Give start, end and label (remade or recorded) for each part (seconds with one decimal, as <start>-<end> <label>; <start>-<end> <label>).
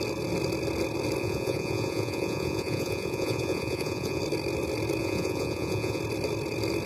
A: 0.0-1.2 recorded; 1.2-4.2 remade; 4.2-5.0 recorded; 5.0-6.0 remade; 6.0-6.9 recorded